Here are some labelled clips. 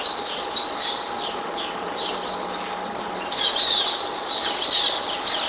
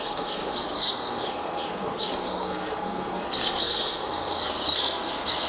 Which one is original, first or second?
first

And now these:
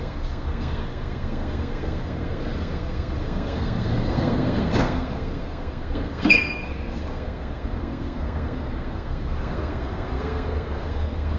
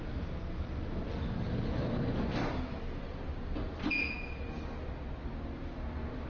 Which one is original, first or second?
second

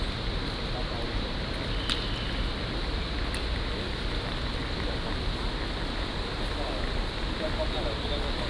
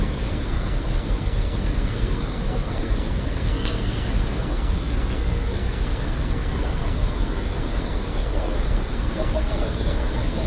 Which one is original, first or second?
first